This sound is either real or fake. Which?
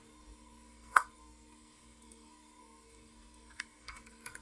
fake